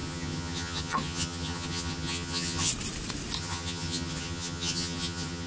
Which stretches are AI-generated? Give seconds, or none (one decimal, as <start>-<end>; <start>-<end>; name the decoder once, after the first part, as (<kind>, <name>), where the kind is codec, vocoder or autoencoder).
0.0-2.7 (vocoder, HiFi-GAN); 3.4-5.5